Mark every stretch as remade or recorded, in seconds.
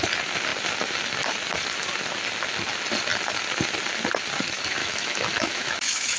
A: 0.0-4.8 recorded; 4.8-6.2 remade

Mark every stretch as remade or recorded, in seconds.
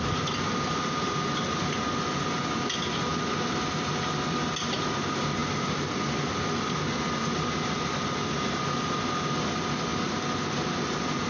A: 0.0-11.3 recorded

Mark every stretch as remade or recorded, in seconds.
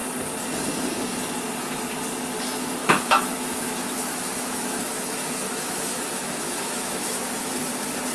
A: 0.0-2.8 recorded; 2.8-7.5 remade; 7.5-8.1 recorded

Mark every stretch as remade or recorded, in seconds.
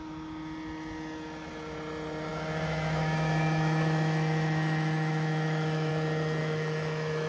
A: 0.0-2.3 recorded; 2.3-5.9 remade; 5.9-6.4 recorded; 6.4-7.3 remade